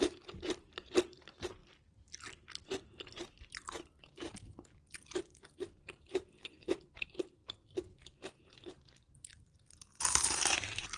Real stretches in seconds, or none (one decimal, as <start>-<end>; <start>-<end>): 1.6-3.3; 7.4-8.4